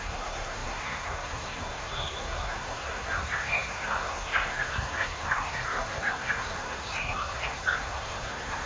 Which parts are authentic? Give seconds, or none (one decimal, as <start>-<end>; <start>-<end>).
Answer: none